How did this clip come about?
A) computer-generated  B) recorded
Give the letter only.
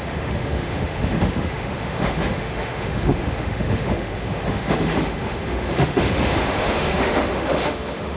A